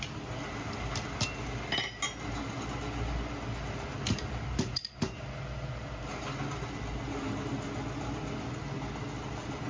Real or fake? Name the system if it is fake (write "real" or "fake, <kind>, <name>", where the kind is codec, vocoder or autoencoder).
real